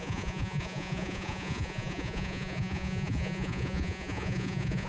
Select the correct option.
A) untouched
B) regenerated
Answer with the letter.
B